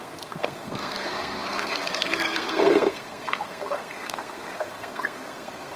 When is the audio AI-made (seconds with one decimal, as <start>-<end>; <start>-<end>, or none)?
0.0-5.8